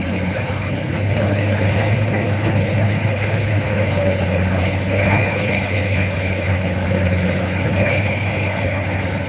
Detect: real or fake fake